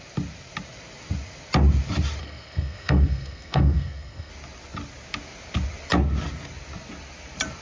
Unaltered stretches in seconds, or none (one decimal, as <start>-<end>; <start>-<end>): 0.0-2.2; 4.3-7.6